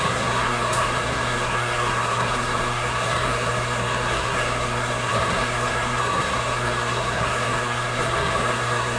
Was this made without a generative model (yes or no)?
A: no